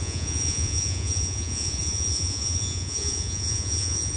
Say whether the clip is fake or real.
fake